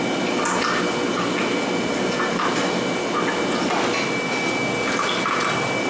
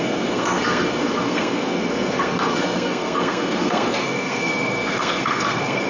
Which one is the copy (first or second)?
second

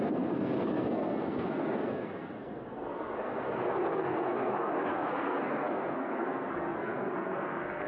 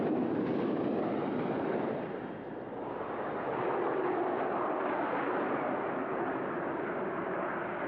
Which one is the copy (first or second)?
first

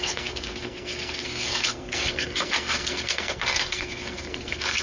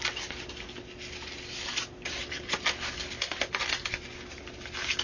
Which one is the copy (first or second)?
first